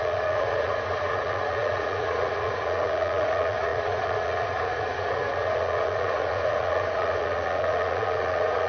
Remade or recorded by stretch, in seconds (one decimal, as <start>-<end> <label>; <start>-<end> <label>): 0.0-8.7 remade